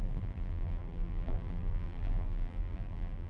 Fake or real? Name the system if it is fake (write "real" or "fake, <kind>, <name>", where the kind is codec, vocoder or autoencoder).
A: fake, vocoder, BigVGAN v2